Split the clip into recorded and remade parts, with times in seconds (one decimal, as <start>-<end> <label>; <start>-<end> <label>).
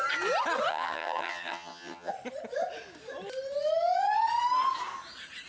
0.0-0.7 recorded; 0.7-2.1 remade; 2.1-5.5 recorded